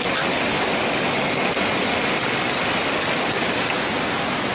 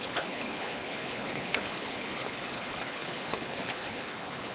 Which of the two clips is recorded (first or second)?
first